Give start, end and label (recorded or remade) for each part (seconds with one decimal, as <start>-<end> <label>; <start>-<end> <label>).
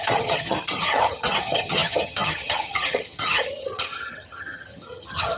0.0-5.4 remade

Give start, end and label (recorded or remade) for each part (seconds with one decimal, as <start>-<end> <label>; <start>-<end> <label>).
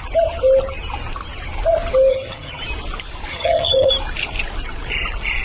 0.0-2.1 recorded; 2.1-2.6 remade; 2.6-3.3 recorded; 3.3-3.9 remade; 3.9-5.4 recorded